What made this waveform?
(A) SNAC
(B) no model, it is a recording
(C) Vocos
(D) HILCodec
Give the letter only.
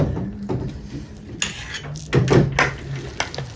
B